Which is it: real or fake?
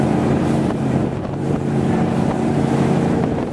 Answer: fake